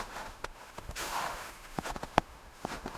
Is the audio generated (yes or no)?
yes